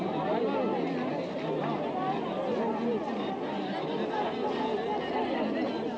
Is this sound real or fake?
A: real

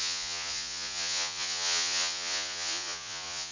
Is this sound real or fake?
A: fake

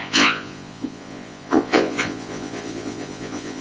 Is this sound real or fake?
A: fake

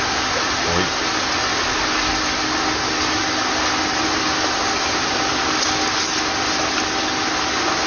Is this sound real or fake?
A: real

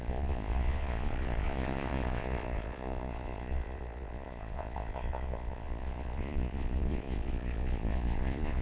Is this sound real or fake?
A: fake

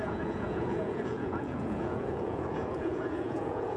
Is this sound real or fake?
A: fake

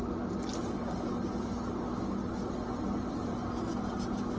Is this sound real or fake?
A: real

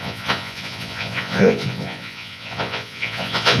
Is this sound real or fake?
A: fake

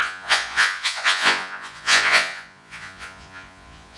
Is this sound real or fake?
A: fake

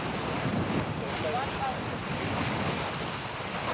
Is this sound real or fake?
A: real